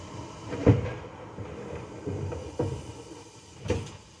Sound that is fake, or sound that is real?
fake